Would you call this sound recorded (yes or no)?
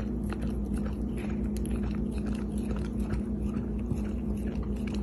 yes